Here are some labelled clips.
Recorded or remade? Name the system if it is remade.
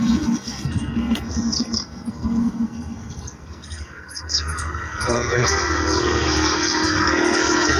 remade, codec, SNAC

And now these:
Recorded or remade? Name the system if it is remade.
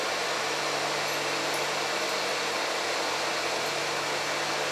recorded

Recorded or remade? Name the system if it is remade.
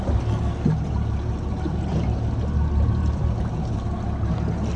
recorded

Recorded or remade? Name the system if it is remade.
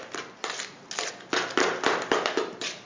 recorded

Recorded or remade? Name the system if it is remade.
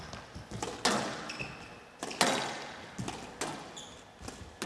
recorded